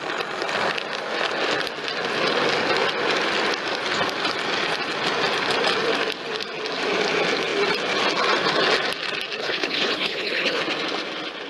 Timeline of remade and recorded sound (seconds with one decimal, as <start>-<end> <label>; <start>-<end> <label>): 0.0-9.4 recorded; 9.4-10.6 remade; 10.6-11.5 recorded